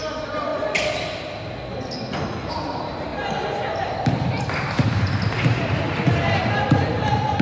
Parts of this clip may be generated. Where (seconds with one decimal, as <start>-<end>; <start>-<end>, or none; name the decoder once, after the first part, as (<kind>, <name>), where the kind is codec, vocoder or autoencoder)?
0.0-0.5 (vocoder, BigVGAN v2); 2.5-7.4